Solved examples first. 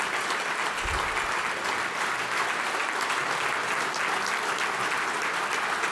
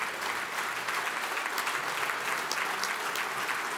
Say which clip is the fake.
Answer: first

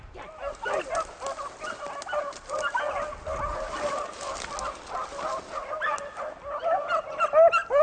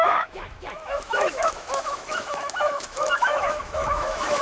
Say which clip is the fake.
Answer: second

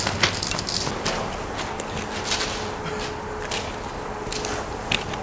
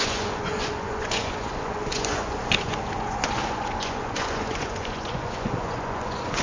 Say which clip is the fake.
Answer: second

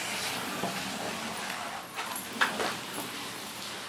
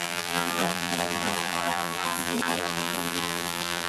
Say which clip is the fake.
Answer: second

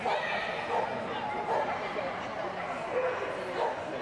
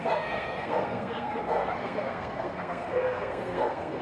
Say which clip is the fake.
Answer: second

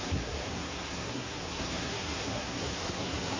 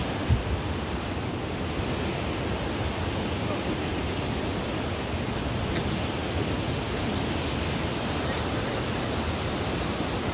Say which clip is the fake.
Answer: first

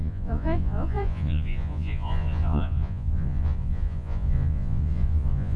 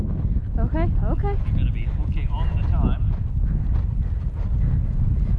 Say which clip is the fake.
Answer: first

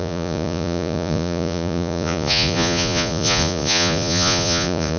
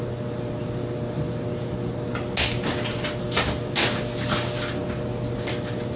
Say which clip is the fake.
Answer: first